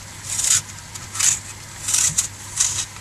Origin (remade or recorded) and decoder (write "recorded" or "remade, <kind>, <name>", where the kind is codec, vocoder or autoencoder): remade, vocoder, BigVGAN v2